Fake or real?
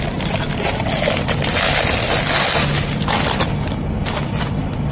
real